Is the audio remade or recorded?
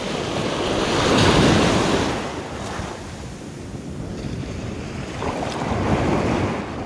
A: recorded